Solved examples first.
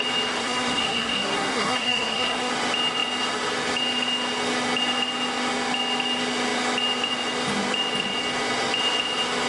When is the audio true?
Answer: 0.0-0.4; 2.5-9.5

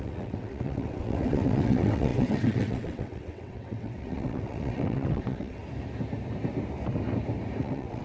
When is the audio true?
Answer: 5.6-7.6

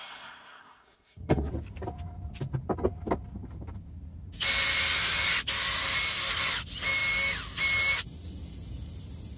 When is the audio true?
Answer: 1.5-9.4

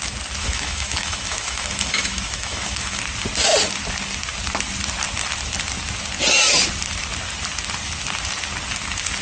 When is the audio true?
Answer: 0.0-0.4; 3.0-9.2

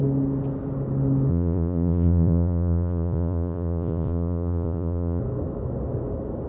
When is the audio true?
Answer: 0.0-1.3; 5.2-6.5

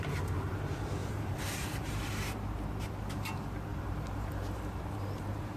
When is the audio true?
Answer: 0.0-1.0; 2.7-3.7

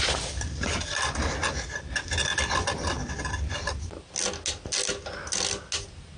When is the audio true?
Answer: 0.0-6.2

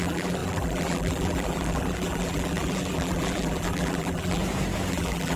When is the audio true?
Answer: 4.4-4.9